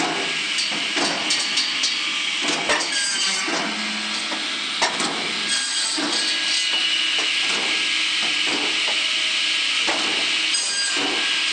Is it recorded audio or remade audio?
recorded